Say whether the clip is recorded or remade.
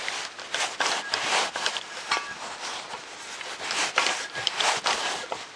recorded